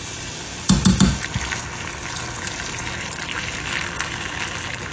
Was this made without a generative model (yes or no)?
yes